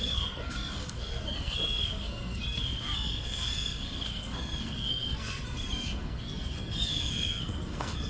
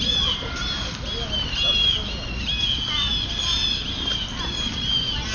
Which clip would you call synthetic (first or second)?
first